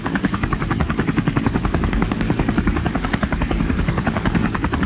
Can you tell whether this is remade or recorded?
remade